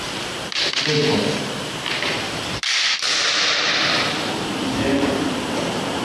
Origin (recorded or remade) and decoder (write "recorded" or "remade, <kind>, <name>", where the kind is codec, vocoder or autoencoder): remade, vocoder, BigVGAN v2